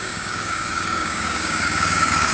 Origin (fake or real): fake